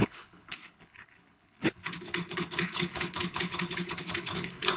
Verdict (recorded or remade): remade